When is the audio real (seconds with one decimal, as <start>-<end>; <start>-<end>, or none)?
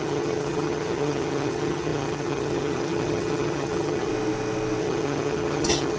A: 4.1-4.8